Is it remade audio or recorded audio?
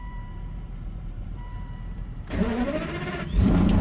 remade